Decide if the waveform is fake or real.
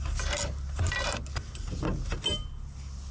real